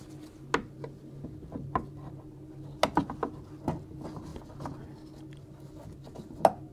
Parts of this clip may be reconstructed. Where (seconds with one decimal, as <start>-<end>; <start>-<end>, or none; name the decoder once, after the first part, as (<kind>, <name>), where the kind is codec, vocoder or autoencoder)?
none